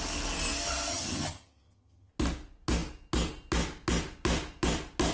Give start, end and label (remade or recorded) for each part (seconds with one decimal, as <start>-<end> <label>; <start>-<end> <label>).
0.0-0.9 recorded; 0.9-2.1 remade; 2.1-5.1 recorded